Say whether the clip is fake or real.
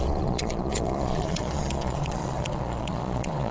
fake